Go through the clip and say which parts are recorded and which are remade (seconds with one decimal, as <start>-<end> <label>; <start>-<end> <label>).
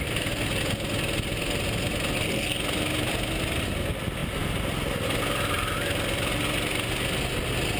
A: 0.0-7.8 recorded